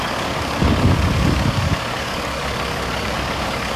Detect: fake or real fake